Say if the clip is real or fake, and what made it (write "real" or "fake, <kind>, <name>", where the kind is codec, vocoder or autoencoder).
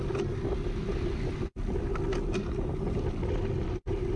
real